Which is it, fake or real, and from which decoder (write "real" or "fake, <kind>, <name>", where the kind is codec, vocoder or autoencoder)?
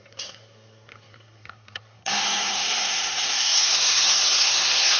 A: fake, codec, SNAC